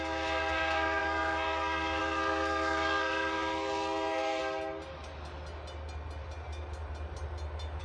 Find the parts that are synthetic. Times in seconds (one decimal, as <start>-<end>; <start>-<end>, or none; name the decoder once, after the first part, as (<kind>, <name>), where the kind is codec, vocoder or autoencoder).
0.0-4.4 (codec, SNAC)